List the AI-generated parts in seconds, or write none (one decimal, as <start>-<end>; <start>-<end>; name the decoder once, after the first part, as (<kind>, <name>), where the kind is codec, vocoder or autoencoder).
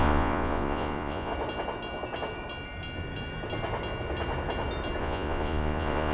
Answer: 0.0-1.3 (vocoder, Vocos); 5.0-6.1